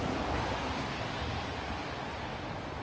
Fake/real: real